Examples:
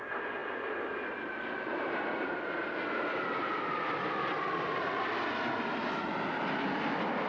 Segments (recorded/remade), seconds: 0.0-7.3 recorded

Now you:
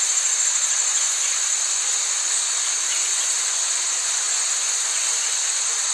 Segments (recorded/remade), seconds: 0.0-0.9 recorded; 0.9-1.4 remade; 1.4-3.1 recorded; 3.1-5.3 remade; 5.3-5.9 recorded

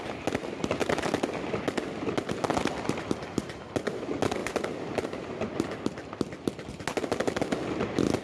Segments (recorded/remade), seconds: 0.0-8.2 recorded

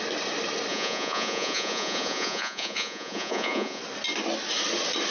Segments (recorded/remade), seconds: 0.0-0.7 recorded; 0.7-3.8 remade; 3.8-5.1 recorded

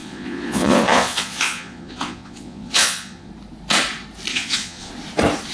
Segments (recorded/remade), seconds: 0.0-3.3 remade; 3.3-4.3 recorded; 4.3-4.9 remade; 4.9-5.5 recorded

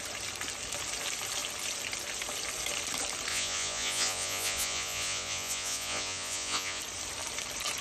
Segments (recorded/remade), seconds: 0.0-3.3 recorded; 3.3-6.8 remade; 6.8-7.8 recorded